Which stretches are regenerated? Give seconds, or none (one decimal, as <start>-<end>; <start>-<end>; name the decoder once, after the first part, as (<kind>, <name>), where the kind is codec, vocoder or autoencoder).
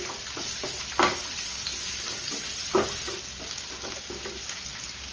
none